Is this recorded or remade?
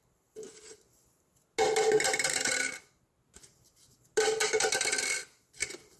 recorded